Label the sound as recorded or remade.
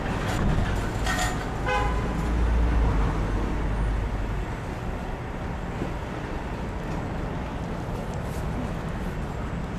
recorded